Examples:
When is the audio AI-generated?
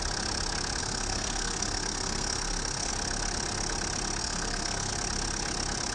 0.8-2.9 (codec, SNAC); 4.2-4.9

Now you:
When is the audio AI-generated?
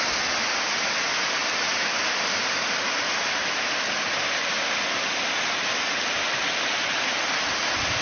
none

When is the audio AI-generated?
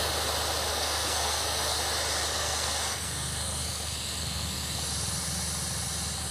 0.7-1.8 (codec, SNAC); 2.3-4.8